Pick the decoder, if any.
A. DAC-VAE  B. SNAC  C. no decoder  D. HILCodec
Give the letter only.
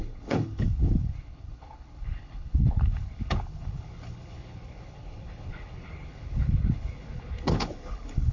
D